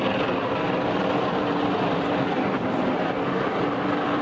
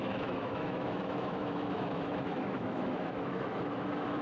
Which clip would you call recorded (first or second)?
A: first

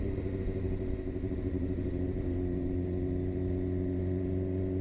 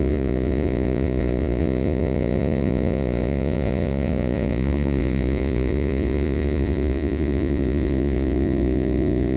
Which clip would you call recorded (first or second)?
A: first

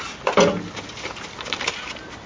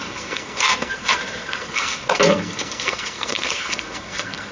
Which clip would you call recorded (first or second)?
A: first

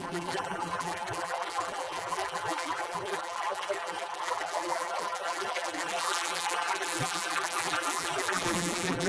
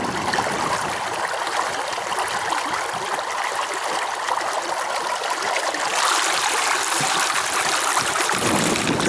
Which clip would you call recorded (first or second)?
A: second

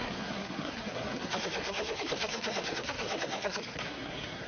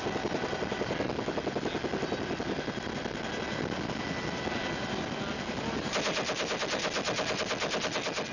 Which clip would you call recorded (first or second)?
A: second